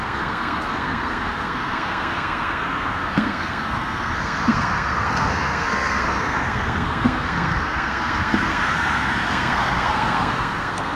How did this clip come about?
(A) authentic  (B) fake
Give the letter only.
B